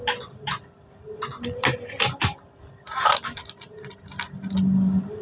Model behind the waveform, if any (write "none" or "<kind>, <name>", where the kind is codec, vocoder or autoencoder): none